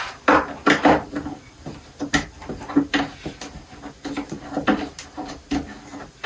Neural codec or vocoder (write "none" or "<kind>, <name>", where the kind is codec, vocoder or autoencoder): none